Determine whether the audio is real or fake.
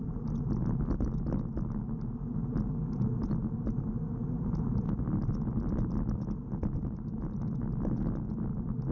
real